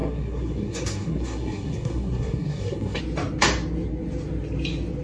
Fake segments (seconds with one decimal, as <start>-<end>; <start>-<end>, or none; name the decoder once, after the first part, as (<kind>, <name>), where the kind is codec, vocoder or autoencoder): 0.0-3.0 (codec, SNAC)

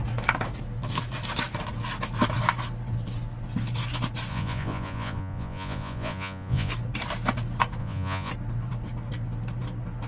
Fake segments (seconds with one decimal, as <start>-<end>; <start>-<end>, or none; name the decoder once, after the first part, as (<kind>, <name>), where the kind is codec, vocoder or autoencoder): 4.3-6.7 (vocoder, Vocos); 7.8-8.3

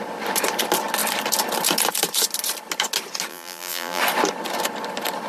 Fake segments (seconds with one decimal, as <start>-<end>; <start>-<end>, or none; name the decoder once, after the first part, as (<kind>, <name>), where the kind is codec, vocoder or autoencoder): 3.3-4.0 (vocoder, BigVGAN v2)

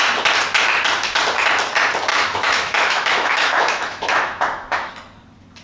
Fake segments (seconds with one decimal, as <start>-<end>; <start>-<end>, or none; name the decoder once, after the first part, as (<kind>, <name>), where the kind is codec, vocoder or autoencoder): 2.1-4.9 (autoencoder, DAC-VAE)

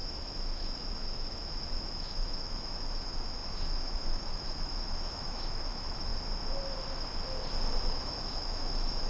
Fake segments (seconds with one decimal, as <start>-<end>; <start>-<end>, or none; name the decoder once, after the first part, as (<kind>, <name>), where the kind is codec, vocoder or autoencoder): 0.0-6.1 (autoencoder, DAC-VAE); 7.8-9.1